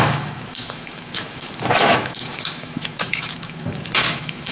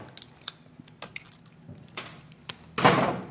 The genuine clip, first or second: second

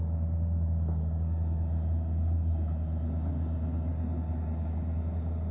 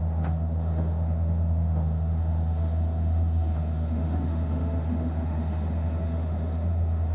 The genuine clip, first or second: first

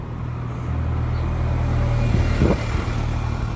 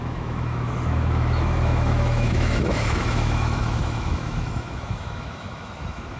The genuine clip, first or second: first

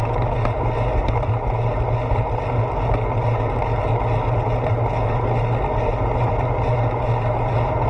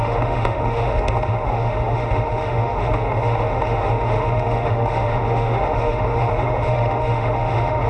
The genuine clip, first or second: first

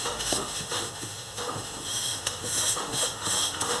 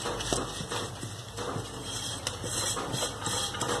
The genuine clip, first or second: second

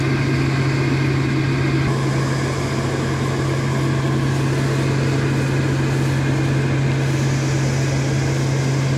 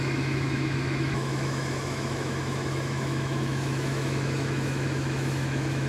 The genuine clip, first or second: first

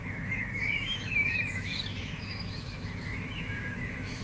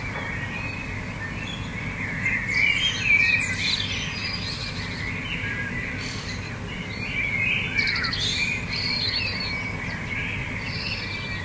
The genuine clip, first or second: second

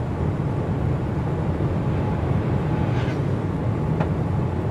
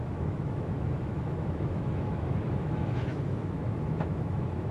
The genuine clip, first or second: first